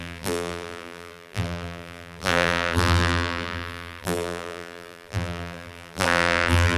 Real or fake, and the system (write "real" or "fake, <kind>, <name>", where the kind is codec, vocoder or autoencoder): fake, vocoder, BigVGAN v2